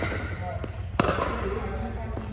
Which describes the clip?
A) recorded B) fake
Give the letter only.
A